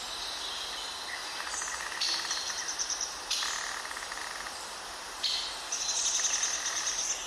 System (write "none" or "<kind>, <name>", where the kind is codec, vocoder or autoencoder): none